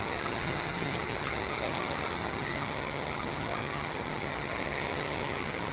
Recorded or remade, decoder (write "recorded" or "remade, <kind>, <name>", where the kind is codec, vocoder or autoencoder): remade, vocoder, HiFi-GAN